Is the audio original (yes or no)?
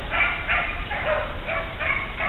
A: yes